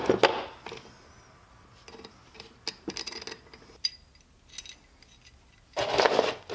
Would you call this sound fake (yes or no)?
no